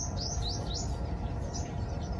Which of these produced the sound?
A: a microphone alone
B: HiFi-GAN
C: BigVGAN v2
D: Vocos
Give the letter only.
C